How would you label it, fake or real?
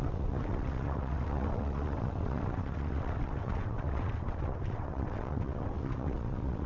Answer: fake